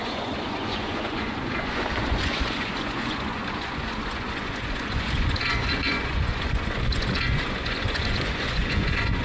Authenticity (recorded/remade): remade